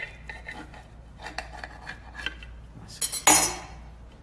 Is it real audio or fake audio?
real